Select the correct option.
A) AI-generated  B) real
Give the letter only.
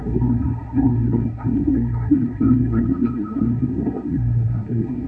A